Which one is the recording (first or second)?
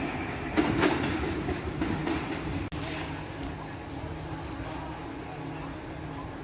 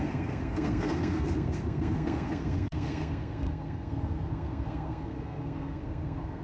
first